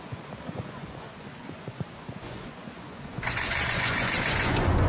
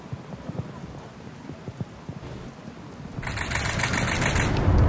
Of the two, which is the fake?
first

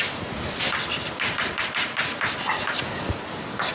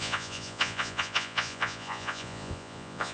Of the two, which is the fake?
second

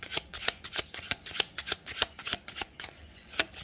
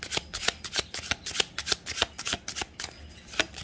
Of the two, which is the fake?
first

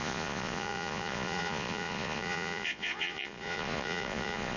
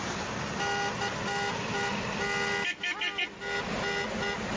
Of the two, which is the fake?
first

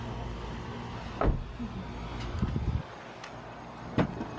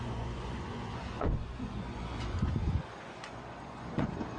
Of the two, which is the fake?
second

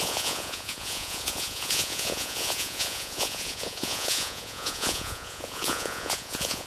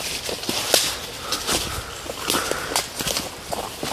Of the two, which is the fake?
first